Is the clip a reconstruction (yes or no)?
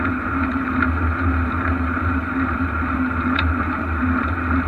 yes